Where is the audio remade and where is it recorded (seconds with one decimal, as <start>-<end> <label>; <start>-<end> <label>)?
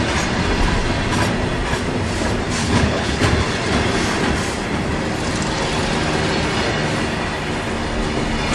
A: 0.0-2.6 recorded; 2.6-3.2 remade; 3.2-8.5 recorded